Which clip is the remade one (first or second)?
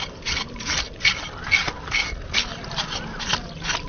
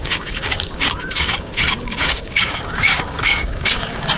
second